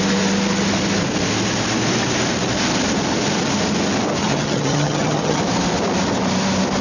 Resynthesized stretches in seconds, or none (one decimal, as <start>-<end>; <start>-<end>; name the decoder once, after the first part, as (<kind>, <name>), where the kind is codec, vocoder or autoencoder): 4.2-5.4 (vocoder, HiFi-GAN)